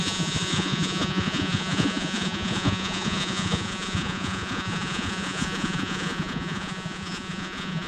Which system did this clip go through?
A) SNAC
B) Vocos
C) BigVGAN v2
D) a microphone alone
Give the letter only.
B